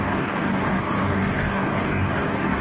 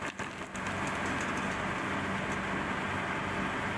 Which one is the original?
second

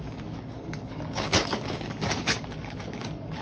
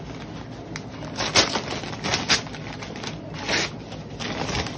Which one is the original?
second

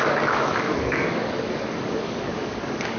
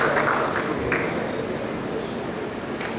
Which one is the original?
second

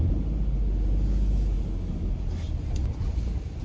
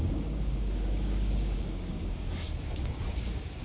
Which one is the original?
first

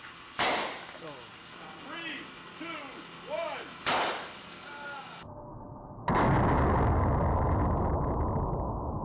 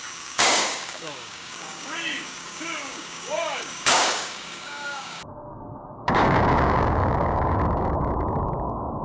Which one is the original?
first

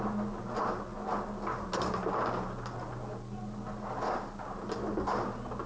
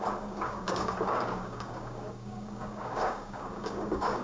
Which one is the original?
first